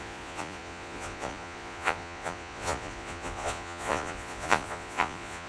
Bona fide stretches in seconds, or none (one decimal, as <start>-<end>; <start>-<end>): none

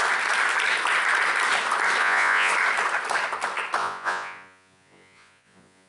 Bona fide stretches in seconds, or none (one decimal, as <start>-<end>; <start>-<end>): 0.0-2.0; 2.5-3.8